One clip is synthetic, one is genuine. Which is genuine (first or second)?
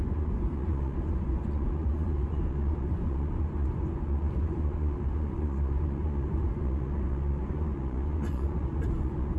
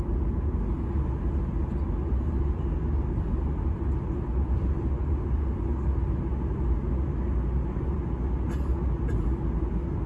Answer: second